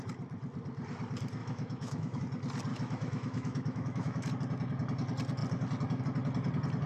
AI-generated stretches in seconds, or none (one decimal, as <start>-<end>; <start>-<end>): 1.4-2.2; 2.7-4.3